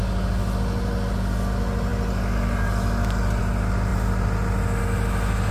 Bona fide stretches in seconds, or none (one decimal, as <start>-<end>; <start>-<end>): 0.0-5.5